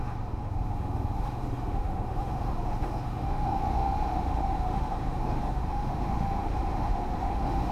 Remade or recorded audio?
remade